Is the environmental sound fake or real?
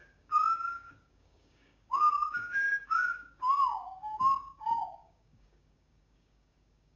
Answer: fake